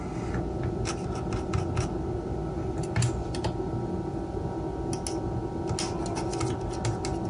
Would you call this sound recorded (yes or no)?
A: yes